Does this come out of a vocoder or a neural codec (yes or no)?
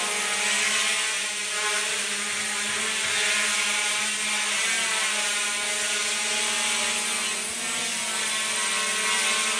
no